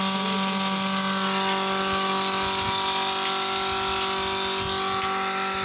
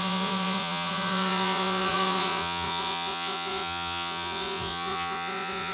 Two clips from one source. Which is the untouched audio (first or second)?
first